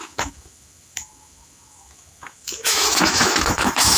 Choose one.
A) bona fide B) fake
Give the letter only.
B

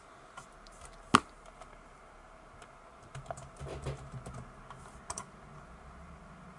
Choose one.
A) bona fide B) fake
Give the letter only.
A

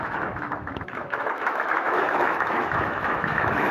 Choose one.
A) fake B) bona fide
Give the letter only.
A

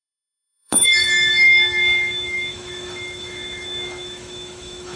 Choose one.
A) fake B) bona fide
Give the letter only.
A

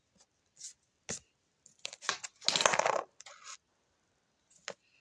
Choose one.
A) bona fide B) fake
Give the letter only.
A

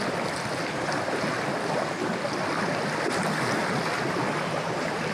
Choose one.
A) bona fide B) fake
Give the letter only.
A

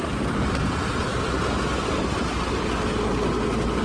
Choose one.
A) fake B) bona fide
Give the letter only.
B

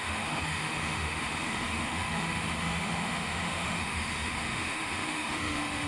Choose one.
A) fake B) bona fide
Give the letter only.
A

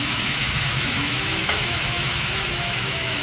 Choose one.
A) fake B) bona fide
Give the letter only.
A